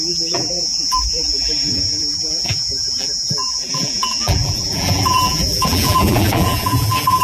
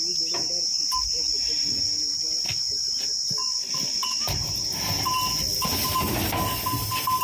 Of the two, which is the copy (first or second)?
first